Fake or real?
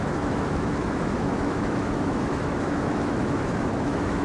fake